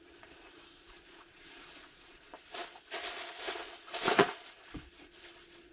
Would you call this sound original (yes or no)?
no